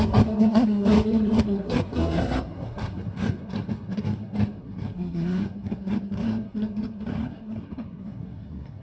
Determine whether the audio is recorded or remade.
remade